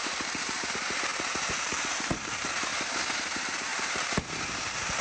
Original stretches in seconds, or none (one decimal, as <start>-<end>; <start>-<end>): 2.7-3.2